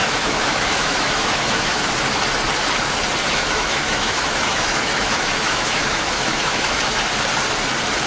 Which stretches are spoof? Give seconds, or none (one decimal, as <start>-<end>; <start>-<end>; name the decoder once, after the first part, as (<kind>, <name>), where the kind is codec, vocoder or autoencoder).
0.0-1.9 (autoencoder, DAC-VAE); 3.3-7.0